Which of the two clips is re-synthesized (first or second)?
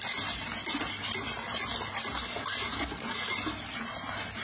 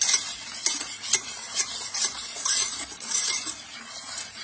second